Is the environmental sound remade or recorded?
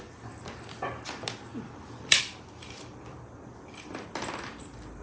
recorded